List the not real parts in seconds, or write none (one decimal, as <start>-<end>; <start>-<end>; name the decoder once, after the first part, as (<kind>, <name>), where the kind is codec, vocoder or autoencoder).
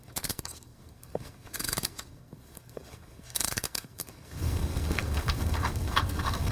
0.0-6.5 (codec, SNAC)